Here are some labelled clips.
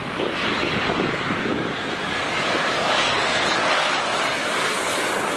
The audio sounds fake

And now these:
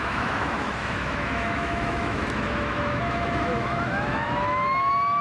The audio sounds fake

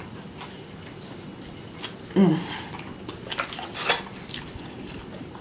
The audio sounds real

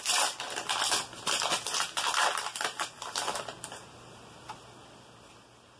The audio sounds real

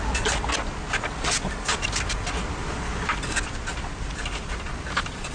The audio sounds real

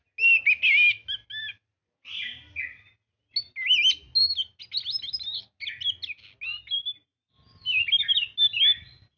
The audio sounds real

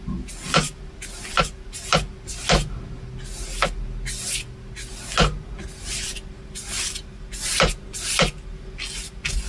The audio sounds real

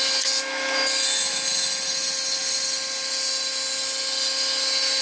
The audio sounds real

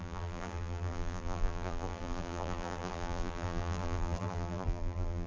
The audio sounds fake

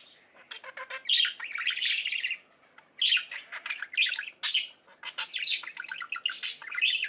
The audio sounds real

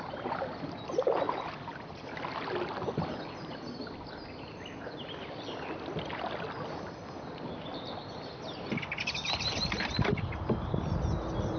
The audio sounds real